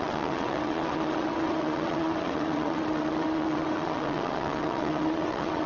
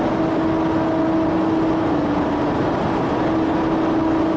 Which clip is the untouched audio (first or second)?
second